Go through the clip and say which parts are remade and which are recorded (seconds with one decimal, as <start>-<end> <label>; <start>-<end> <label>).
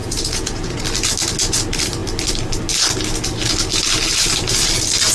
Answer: 0.0-0.8 remade; 0.8-5.1 recorded